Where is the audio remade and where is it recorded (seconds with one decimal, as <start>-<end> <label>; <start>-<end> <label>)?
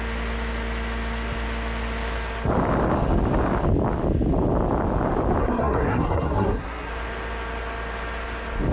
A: 0.0-5.4 recorded; 5.4-6.9 remade; 6.9-8.7 recorded